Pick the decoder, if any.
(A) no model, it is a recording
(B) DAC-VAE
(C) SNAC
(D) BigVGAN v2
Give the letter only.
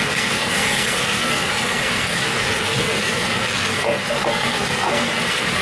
C